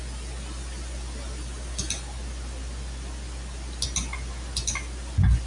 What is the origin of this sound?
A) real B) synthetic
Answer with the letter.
A